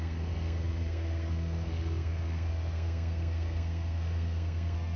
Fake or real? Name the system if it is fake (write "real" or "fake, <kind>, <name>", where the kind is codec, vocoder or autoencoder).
fake, codec, SNAC